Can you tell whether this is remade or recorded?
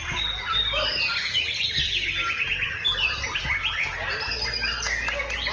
recorded